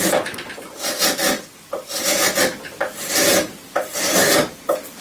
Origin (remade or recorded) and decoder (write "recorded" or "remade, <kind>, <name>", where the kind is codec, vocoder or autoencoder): recorded